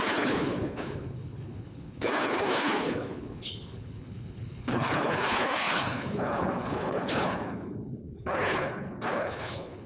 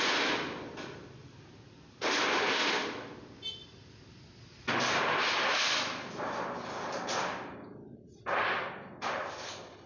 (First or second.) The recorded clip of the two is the second